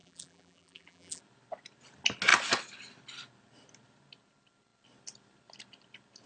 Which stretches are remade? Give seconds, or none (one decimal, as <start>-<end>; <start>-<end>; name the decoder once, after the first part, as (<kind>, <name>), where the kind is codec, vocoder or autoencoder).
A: 0.0-1.2 (vocoder, BigVGAN v2)